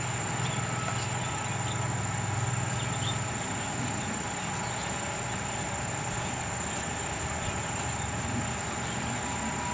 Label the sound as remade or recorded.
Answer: recorded